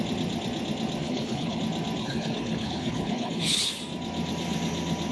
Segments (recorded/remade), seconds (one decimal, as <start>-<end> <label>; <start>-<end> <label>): 0.0-1.0 recorded; 1.0-1.6 remade; 1.6-2.0 recorded; 2.0-3.8 remade; 3.8-5.1 recorded